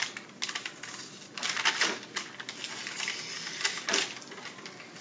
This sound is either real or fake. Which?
real